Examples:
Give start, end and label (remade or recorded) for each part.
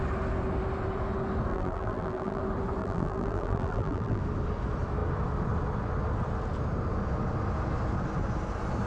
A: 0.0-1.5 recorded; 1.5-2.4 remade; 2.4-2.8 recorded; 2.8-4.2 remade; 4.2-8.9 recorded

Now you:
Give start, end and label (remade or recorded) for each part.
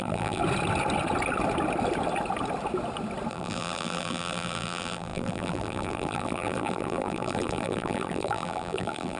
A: 0.0-0.4 remade; 0.4-3.3 recorded; 3.3-9.2 remade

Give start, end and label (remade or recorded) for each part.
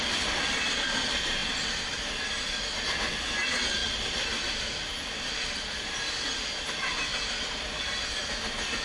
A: 0.0-3.8 recorded; 3.8-5.8 remade; 5.8-8.8 recorded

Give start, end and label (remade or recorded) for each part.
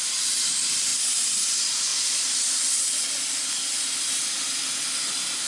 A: 0.0-0.9 remade; 0.9-1.4 recorded; 1.4-1.9 remade; 1.9-5.5 recorded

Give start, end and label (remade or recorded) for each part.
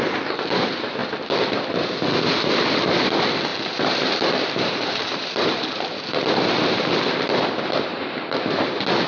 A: 0.0-3.5 recorded; 3.5-5.9 remade; 5.9-7.9 recorded; 7.9-8.7 remade; 8.7-9.1 recorded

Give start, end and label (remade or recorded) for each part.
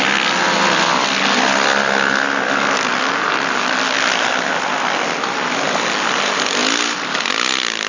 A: 0.0-7.9 recorded